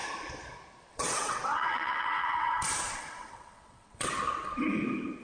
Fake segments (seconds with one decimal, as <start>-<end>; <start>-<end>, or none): 0.9-2.5; 3.0-4.1